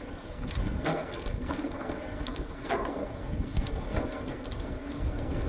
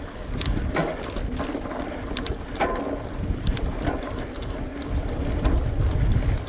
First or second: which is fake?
first